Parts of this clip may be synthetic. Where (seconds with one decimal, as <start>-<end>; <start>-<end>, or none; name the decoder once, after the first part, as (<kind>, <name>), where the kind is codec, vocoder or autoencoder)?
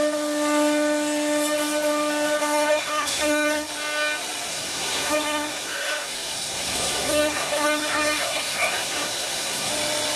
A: 2.4-3.7 (codec, SNAC); 4.5-9.7